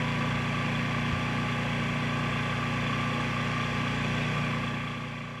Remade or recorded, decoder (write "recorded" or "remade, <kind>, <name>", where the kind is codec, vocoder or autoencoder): recorded